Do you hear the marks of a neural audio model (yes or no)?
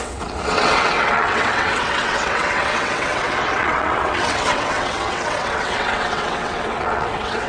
yes